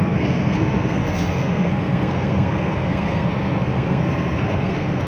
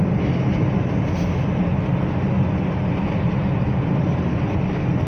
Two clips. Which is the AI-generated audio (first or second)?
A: first